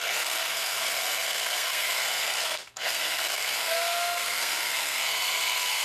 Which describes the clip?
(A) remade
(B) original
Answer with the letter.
A